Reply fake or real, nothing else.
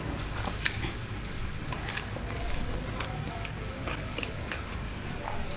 fake